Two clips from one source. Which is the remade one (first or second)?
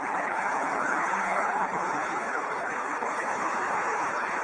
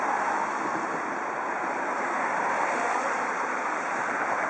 first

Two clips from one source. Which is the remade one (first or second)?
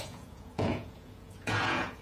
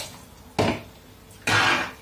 first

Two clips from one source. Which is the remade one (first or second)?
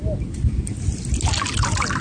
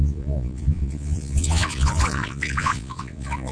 second